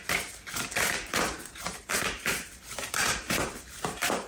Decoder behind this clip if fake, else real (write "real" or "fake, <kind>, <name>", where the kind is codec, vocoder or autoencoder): fake, vocoder, BigVGAN v2